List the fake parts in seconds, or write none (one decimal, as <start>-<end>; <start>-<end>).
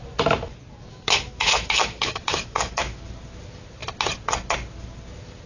0.9-3.0